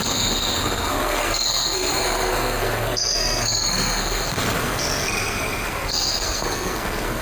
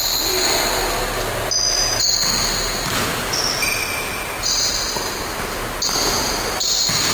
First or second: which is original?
second